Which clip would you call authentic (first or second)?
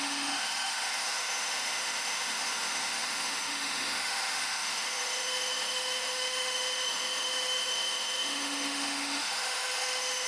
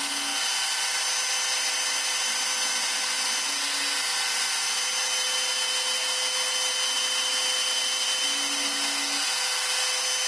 second